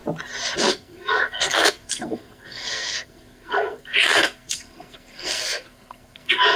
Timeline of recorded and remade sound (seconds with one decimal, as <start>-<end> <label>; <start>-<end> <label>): 0.0-0.6 recorded; 0.6-6.6 remade